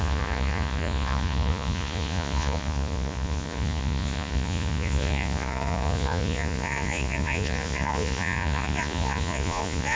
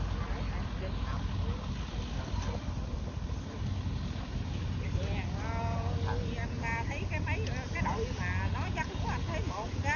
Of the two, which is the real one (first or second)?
second